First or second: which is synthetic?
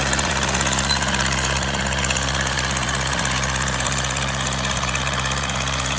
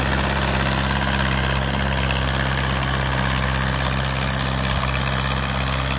first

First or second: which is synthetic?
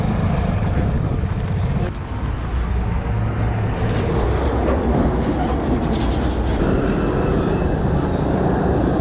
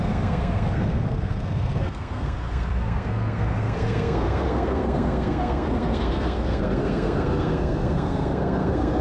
second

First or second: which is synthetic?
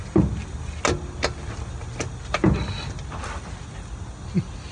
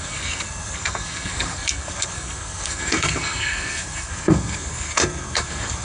second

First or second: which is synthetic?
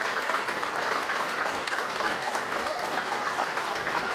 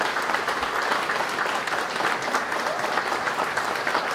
first